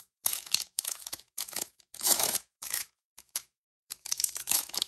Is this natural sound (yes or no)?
no